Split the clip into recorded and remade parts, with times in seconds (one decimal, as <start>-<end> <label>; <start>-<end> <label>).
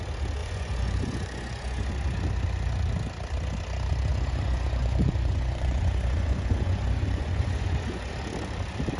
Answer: 0.0-0.4 recorded; 0.4-1.9 remade; 1.9-4.1 recorded; 4.1-8.1 remade; 8.1-9.0 recorded